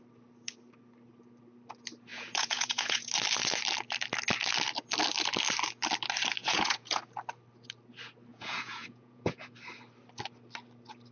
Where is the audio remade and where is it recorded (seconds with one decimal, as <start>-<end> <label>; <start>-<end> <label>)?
0.0-2.1 recorded; 2.1-3.1 remade; 3.1-6.4 recorded; 6.4-7.0 remade; 7.0-8.3 recorded; 8.3-9.5 remade; 9.5-11.1 recorded